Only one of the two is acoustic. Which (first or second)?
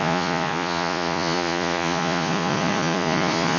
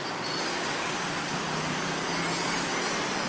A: second